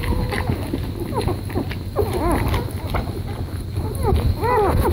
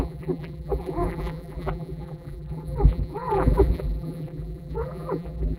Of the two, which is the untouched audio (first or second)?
first